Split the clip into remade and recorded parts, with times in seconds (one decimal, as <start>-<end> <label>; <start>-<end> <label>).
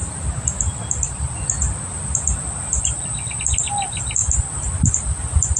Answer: 0.0-5.6 recorded